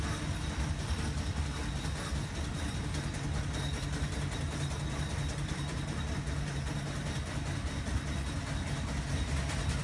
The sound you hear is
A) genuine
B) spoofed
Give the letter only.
A